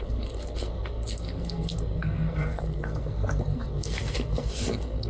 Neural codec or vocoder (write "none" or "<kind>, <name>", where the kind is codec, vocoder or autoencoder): codec, SNAC